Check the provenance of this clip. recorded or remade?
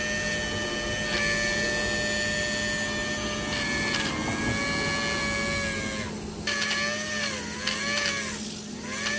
recorded